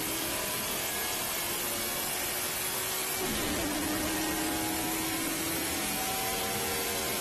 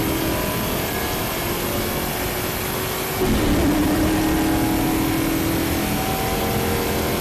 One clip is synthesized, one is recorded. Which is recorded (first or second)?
first